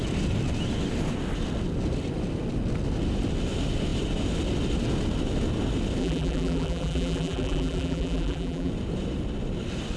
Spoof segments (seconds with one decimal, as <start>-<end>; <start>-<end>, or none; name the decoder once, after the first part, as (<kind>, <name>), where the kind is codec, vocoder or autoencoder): 6.0-8.7 (vocoder, BigVGAN v2)